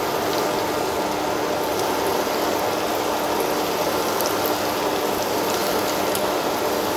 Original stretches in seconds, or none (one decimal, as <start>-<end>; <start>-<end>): 0.0-7.0